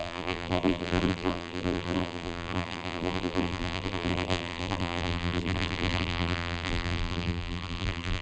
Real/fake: fake